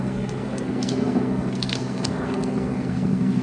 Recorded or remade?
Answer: remade